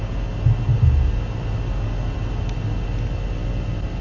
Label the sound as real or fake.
real